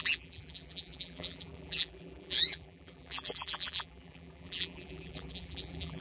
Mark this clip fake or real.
fake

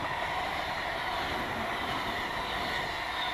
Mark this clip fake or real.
real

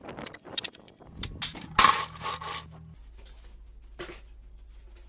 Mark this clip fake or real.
real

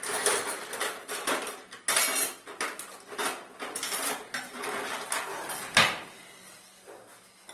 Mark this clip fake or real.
real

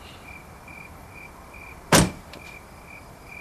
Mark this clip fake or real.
fake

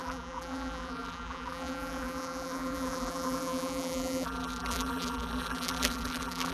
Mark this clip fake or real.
fake